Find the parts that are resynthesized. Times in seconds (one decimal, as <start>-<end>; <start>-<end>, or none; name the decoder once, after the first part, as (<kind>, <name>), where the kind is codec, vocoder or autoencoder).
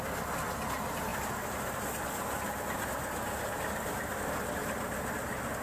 none